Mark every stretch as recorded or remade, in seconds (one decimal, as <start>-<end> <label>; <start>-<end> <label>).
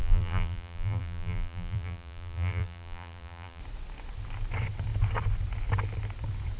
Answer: 0.0-3.6 remade; 3.6-6.6 recorded